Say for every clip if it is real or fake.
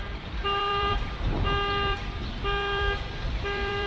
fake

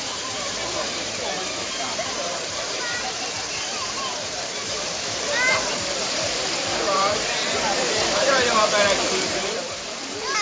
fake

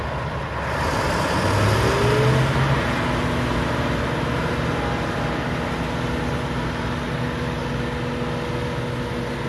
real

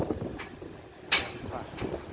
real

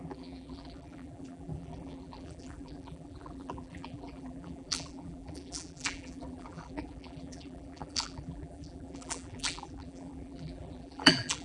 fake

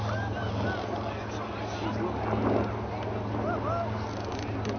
fake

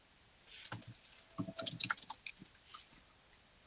real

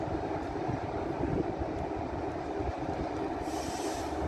real